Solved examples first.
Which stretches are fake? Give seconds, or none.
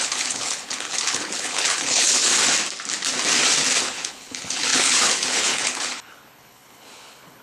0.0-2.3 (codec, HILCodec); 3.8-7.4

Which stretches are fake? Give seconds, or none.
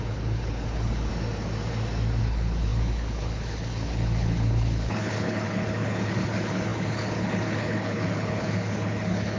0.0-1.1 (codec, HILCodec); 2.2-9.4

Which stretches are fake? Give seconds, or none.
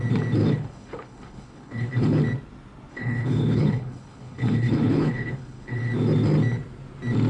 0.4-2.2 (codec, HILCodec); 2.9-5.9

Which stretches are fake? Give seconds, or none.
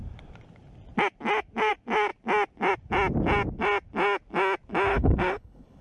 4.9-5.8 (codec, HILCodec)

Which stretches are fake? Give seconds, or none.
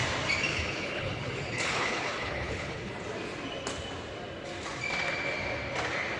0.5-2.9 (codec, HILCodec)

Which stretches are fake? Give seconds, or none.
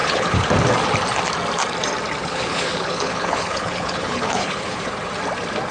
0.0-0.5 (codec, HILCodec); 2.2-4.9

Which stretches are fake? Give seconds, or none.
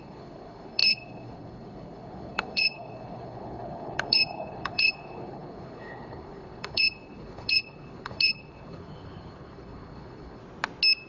0.0-10.4 (codec, HILCodec)